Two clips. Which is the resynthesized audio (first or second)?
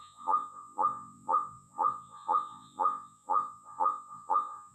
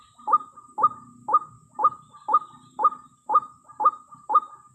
first